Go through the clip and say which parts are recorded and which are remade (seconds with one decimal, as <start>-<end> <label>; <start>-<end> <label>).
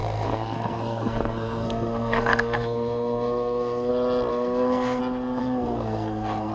0.0-3.9 remade; 3.9-4.3 recorded; 4.3-5.0 remade; 5.0-5.4 recorded; 5.4-6.5 remade